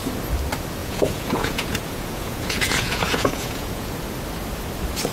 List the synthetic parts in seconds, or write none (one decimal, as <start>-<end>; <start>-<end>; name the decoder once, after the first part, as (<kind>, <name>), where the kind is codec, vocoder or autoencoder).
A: 0.8-3.9 (vocoder, Vocos)